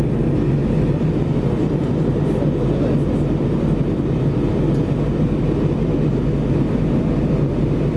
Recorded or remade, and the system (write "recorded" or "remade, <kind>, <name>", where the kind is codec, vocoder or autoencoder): recorded